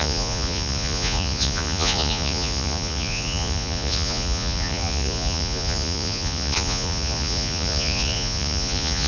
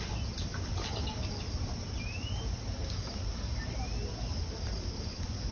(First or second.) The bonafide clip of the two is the second